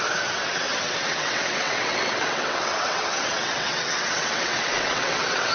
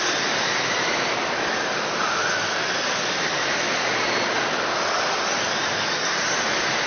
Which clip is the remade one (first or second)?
first